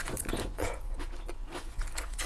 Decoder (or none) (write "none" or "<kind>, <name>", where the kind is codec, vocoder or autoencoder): vocoder, Vocos